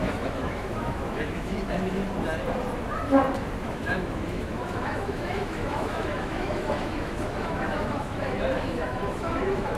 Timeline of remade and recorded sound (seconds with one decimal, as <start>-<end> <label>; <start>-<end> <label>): 0.0-2.0 remade; 2.0-3.7 recorded; 3.7-9.8 remade